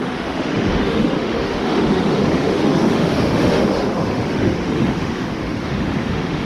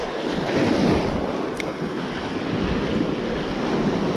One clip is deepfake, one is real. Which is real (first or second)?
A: second